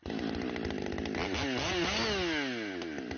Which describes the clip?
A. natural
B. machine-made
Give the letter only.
A